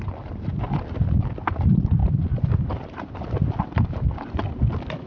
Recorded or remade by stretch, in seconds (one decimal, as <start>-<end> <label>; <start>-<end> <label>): 0.0-0.5 recorded; 0.5-1.3 remade; 1.3-2.0 recorded; 2.0-5.1 remade